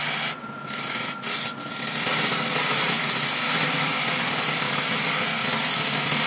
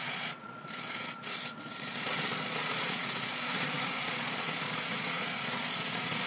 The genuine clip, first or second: first